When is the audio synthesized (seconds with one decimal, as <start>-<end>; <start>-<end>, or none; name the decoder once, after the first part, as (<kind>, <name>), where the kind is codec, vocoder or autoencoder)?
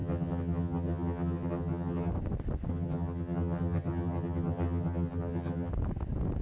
0.0-2.1 (vocoder, HiFi-GAN); 2.7-5.7